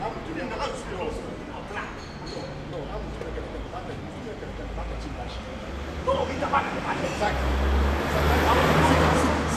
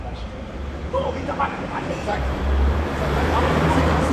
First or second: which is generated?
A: second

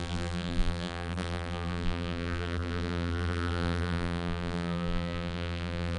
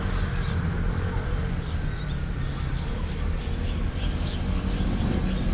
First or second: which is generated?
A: first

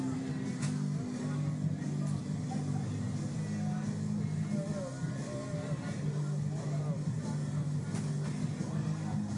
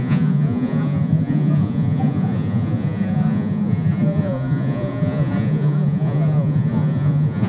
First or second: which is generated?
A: second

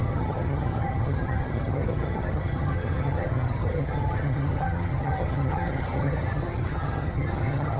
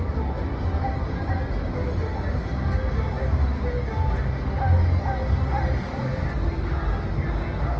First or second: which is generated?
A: first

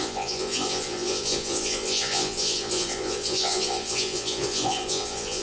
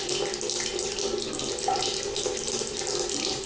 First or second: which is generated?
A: first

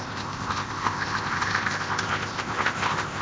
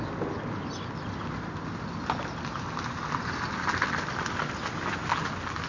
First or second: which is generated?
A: first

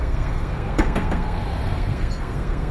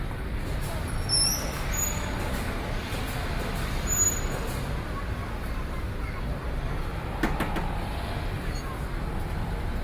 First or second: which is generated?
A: first